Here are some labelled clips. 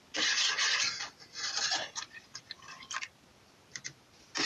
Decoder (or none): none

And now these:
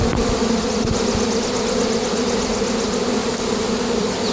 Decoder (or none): none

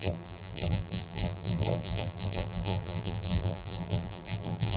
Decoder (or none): vocoder, BigVGAN v2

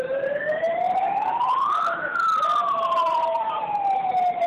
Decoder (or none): vocoder, BigVGAN v2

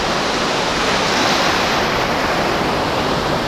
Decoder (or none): none